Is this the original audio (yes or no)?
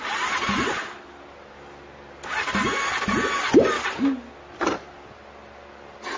yes